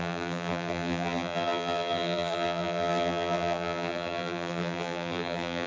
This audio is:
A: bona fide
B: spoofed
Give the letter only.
B